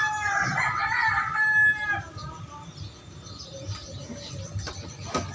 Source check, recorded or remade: recorded